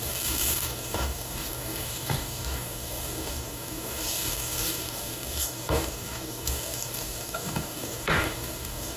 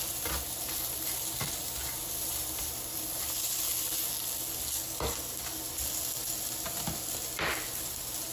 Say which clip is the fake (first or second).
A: first